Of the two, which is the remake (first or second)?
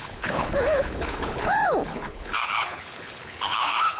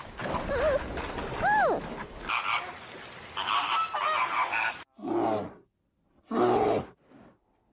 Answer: first